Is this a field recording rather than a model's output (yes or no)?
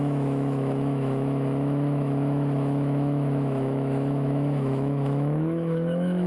no